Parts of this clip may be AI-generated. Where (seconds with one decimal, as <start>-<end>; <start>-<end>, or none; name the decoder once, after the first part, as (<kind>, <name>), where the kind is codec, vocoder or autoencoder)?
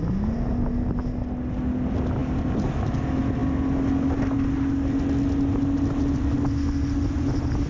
none